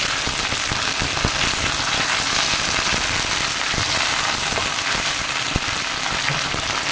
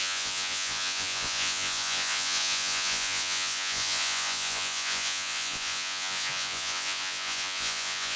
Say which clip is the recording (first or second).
first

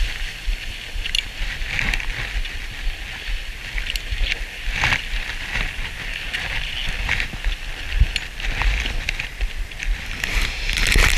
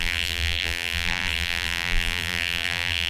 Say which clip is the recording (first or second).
first